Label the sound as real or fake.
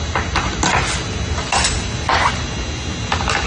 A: real